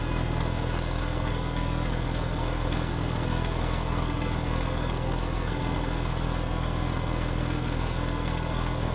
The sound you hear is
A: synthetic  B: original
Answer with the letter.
A